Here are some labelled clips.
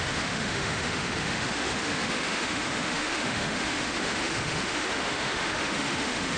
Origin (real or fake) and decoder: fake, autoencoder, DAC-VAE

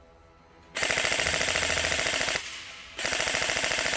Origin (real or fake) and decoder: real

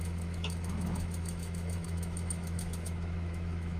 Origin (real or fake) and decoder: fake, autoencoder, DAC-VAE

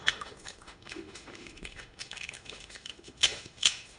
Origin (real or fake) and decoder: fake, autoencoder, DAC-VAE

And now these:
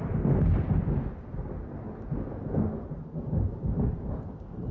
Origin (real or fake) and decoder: real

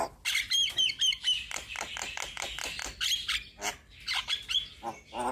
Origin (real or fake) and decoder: real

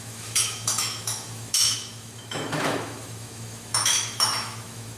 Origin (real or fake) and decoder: fake, autoencoder, DAC-VAE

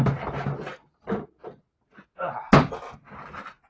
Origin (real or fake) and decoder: real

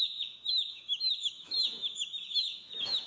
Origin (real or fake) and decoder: fake, autoencoder, DAC-VAE